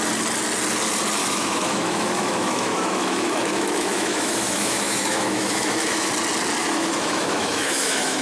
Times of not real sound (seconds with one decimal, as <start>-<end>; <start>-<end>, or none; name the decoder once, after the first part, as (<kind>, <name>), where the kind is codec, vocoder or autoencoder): 1.2-6.1 (autoencoder, DAC-VAE); 6.6-8.2